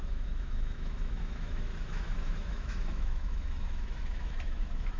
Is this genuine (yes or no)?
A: no